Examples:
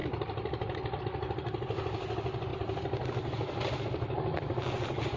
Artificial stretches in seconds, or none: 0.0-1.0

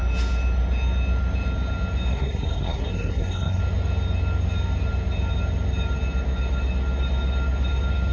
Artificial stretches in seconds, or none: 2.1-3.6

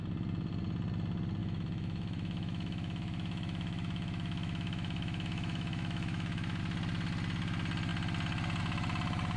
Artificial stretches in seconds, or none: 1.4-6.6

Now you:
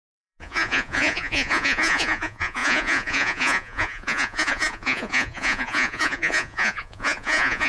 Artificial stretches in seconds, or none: 0.0-7.7